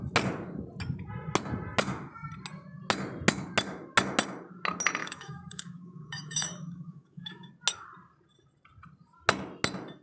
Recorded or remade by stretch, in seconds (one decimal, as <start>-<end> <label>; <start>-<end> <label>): 0.0-5.0 recorded; 5.0-7.5 remade; 7.5-10.0 recorded